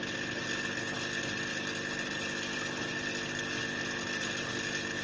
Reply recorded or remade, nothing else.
recorded